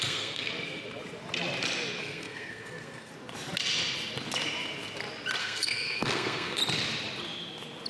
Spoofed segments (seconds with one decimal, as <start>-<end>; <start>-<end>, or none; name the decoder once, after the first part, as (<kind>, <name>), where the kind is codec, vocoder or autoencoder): 0.0-0.5 (codec, SNAC); 2.0-3.1; 5.4-6.6